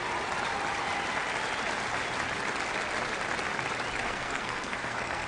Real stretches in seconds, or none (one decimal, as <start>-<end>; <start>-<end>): 0.0-4.0